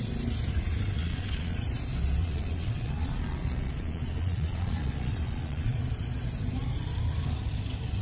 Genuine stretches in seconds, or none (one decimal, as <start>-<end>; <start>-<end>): 0.0-1.0; 1.6-2.2; 5.8-8.0